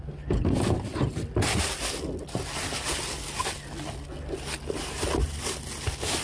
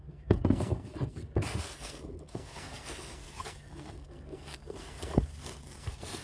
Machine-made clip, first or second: second